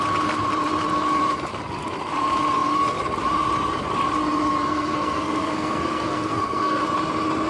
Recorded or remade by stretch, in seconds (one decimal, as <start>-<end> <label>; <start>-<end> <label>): 0.0-4.7 recorded; 4.7-6.8 remade; 6.8-7.5 recorded